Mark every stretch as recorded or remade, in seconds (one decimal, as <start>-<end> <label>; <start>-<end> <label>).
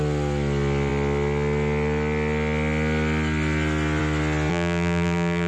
0.0-4.5 recorded; 4.5-5.5 remade